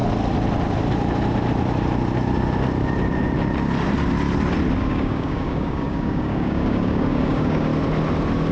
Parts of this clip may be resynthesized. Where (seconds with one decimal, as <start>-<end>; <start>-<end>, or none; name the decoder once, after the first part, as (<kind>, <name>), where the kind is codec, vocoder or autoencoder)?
4.8-7.7 (codec, DAC)